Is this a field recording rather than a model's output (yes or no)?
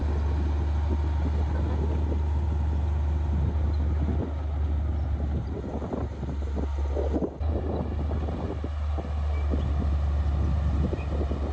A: yes